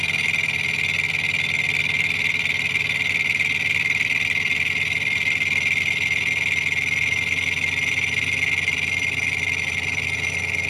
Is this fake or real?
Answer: real